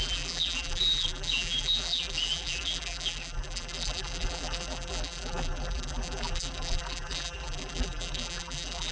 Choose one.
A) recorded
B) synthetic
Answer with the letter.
B